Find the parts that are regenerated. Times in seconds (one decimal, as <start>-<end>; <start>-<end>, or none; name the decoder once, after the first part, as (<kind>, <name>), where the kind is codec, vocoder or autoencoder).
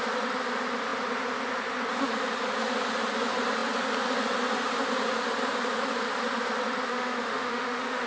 6.9-8.1 (autoencoder, DAC-VAE)